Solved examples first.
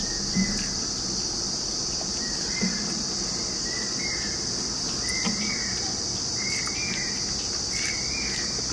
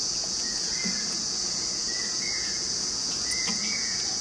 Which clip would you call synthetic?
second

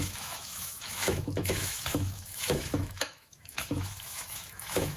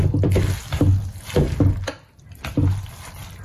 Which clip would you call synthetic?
first